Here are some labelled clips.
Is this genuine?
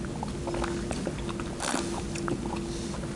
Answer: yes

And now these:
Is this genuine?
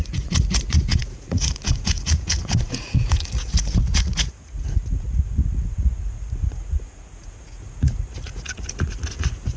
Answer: no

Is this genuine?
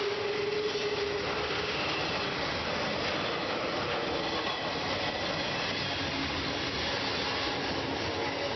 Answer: yes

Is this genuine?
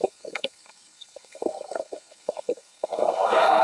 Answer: no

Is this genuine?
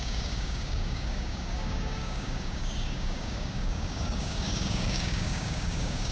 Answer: no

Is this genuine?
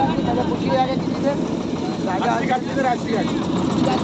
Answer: yes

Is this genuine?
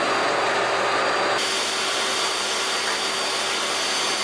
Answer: yes